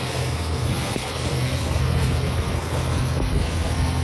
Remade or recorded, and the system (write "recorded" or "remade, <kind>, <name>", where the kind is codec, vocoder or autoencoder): remade, codec, SNAC